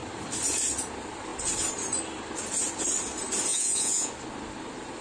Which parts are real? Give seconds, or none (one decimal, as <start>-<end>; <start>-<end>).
0.0-3.5; 4.1-5.0